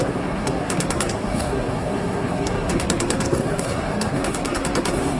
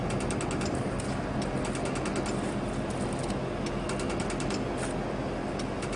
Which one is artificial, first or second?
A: first